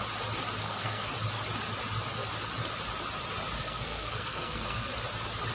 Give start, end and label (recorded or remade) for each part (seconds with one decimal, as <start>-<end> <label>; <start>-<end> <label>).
0.0-0.6 recorded; 0.6-1.1 remade; 1.1-3.6 recorded; 3.6-4.9 remade; 4.9-5.5 recorded